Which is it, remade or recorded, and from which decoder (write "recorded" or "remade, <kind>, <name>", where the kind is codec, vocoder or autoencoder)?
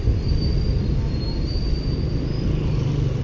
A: recorded